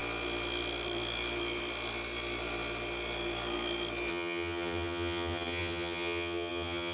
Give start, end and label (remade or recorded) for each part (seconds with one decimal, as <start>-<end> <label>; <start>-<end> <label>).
0.0-4.1 recorded; 4.1-6.9 remade